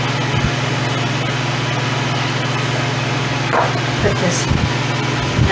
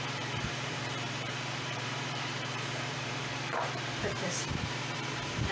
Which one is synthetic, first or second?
second